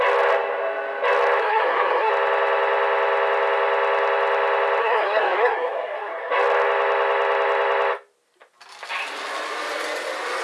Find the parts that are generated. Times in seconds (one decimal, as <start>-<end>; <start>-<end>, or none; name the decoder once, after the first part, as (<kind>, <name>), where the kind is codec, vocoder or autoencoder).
1.4-2.1 (codec, SNAC); 4.8-6.3